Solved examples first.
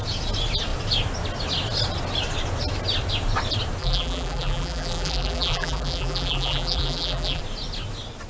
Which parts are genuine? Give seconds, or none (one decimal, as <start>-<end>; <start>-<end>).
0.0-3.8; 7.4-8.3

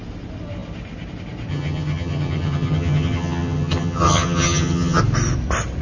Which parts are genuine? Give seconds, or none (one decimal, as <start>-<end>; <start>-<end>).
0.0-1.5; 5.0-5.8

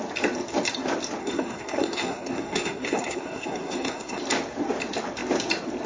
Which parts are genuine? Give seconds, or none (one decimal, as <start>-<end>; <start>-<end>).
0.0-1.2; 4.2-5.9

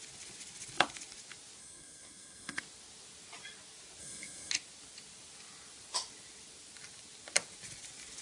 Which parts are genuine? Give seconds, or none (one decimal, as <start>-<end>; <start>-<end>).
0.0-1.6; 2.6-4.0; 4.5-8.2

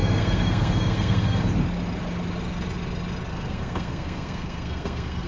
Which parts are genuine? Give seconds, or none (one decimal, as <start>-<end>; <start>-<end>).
1.4-3.3